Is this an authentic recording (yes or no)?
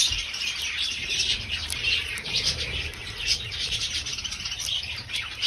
no